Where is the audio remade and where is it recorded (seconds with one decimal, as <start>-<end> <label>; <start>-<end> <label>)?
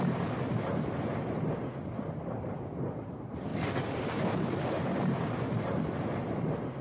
0.0-3.5 remade; 3.5-4.3 recorded; 4.3-6.8 remade